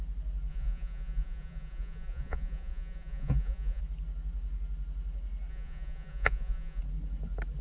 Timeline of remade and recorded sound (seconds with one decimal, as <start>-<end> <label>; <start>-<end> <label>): 0.0-0.5 recorded; 0.5-3.8 remade; 3.8-5.5 recorded; 5.5-6.8 remade; 6.8-7.6 recorded

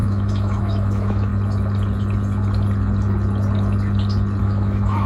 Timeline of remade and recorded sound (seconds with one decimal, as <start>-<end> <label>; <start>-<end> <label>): 0.0-1.3 remade; 1.3-4.4 recorded; 4.4-5.1 remade

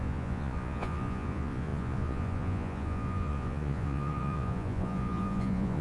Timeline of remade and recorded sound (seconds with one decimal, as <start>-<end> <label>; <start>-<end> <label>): 0.0-5.8 remade

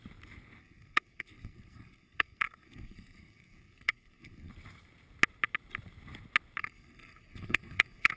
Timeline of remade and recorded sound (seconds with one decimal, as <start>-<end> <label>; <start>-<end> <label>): 0.0-0.6 recorded; 0.6-4.5 remade; 4.5-6.6 recorded; 6.6-8.2 remade

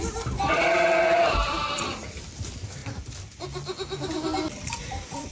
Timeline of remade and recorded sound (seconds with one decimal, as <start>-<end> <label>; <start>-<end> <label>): 0.0-5.3 remade

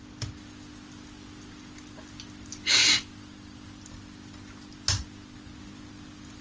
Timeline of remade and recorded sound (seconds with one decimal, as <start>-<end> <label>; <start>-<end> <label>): 0.0-6.4 recorded

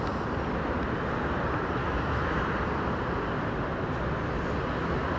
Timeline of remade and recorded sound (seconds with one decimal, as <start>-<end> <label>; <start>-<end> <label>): 0.0-1.8 recorded; 1.8-2.4 remade; 2.4-5.2 recorded